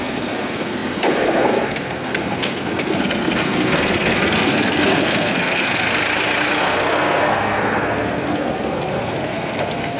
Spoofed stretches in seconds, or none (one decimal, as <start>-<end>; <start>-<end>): 0.0-6.0; 6.6-10.0